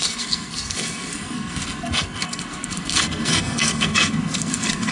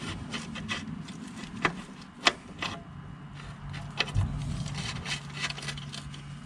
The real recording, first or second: second